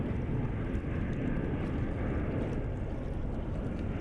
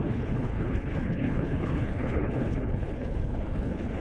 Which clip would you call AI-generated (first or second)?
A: second